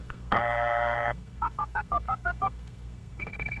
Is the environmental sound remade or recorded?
remade